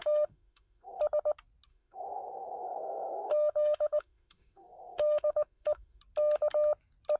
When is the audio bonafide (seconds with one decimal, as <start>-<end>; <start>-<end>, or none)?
1.0-1.7; 6.0-7.2